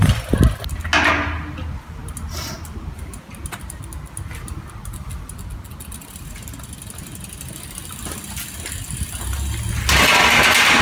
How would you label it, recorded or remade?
recorded